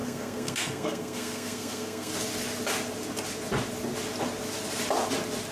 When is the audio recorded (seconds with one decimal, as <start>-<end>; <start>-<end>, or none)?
2.1-5.5